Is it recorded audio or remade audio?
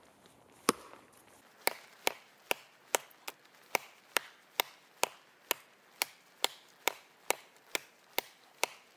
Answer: recorded